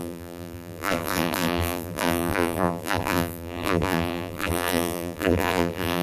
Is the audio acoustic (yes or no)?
no